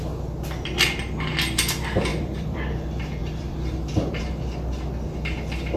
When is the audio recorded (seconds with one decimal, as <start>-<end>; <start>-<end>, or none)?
0.0-2.1; 2.7-3.2; 4.2-5.8